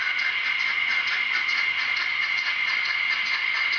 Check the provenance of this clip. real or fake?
real